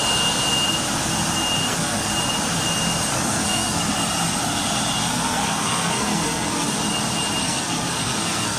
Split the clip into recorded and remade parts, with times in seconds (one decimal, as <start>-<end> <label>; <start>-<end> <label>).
0.0-1.6 recorded; 1.6-2.1 remade; 2.1-3.1 recorded; 3.1-3.8 remade; 3.8-5.0 recorded; 5.0-6.8 remade; 6.8-7.4 recorded; 7.4-8.6 remade